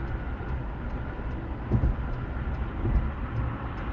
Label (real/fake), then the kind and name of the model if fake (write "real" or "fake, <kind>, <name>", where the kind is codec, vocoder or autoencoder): real